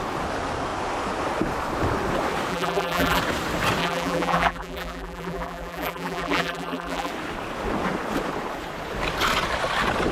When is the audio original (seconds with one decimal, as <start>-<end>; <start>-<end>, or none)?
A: 0.0-2.5; 3.2-3.8; 7.1-10.1